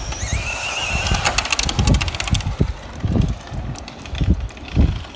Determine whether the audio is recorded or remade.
recorded